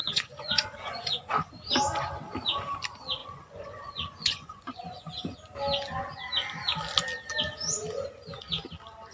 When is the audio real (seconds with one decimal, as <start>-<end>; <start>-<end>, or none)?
1.5-3.2; 5.1-9.1